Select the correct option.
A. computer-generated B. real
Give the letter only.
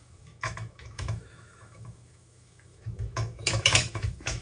A